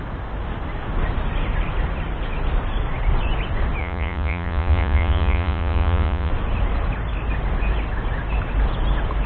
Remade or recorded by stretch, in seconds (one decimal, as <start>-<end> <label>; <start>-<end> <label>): 0.0-3.8 recorded; 3.8-6.3 remade; 6.3-9.3 recorded